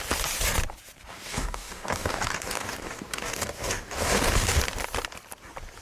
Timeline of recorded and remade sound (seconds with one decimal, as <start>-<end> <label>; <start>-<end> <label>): 0.0-1.1 recorded; 1.1-4.6 remade; 4.6-5.8 recorded